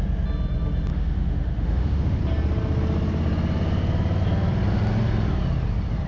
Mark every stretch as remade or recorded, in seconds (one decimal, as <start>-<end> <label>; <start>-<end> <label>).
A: 0.0-0.9 recorded; 0.9-2.2 remade; 2.2-6.1 recorded